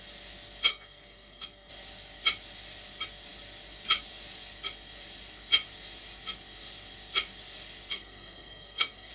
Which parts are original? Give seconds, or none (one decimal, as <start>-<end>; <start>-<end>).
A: 0.0-0.7; 1.7-7.9